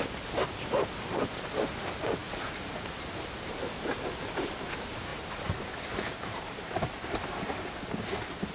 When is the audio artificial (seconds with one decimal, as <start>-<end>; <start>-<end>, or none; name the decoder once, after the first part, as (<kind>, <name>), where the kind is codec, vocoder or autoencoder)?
2.2-3.6 (vocoder, BigVGAN v2); 5.1-7.7